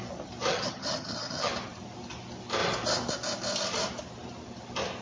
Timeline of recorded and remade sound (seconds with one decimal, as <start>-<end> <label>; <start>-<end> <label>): 0.0-0.5 recorded; 0.5-1.5 remade; 1.5-5.0 recorded